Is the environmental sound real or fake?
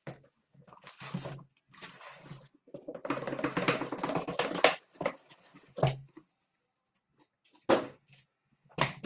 real